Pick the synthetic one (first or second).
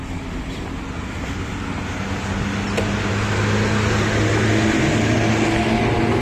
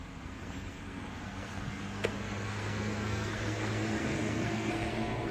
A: second